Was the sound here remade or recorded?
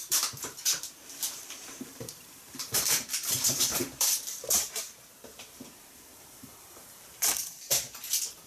remade